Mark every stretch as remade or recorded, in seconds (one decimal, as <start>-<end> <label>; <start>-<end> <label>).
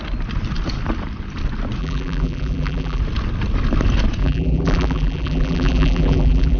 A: 0.0-1.8 recorded; 1.8-3.0 remade; 3.0-4.2 recorded; 4.2-6.6 remade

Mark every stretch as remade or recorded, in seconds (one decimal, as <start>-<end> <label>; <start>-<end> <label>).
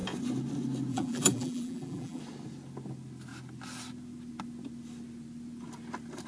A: 0.0-0.9 recorded; 0.9-2.2 remade; 2.2-6.3 recorded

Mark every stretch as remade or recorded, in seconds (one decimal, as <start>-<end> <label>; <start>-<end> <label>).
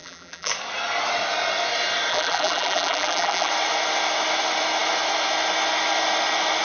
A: 0.0-0.5 remade; 0.5-2.1 recorded; 2.1-3.5 remade; 3.5-6.6 recorded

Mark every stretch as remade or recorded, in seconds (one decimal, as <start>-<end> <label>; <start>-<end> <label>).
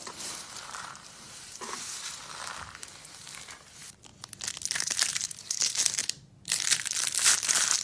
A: 0.0-2.2 remade; 2.2-3.2 recorded; 3.2-4.1 remade; 4.1-4.7 recorded; 4.7-6.0 remade; 6.0-7.8 recorded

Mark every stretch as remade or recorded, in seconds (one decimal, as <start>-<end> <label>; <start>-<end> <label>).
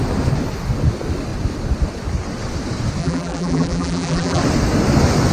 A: 0.0-3.0 recorded; 3.0-4.4 remade; 4.4-5.3 recorded